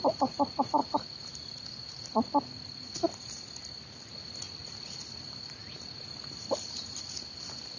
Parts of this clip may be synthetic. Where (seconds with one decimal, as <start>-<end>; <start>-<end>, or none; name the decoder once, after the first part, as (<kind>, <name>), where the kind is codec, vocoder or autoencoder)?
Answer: none